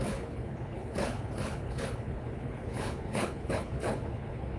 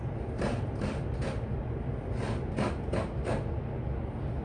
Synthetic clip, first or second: first